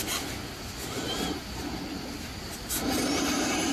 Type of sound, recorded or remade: recorded